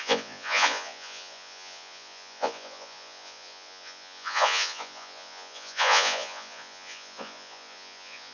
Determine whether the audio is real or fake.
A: fake